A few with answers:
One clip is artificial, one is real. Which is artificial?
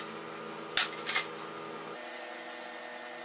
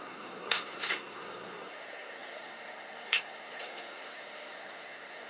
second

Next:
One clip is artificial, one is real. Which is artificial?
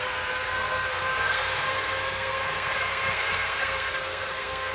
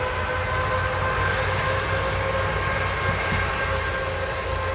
first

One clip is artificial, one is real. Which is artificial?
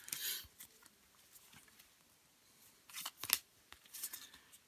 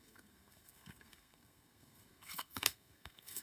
second